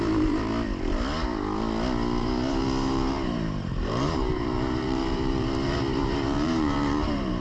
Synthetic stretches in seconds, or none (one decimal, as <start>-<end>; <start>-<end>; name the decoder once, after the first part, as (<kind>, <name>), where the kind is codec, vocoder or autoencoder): 0.0-0.5 (vocoder, BigVGAN v2); 2.2-7.4